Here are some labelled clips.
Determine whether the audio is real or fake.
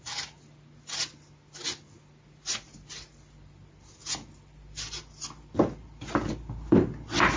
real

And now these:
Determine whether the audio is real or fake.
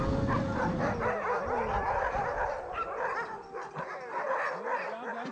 real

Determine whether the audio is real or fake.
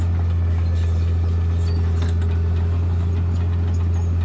real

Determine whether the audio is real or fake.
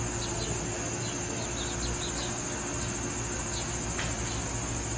real